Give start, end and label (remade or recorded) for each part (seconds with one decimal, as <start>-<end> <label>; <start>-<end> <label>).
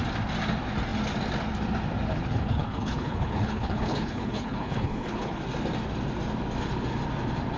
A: 0.0-2.2 recorded; 2.2-5.4 remade; 5.4-7.6 recorded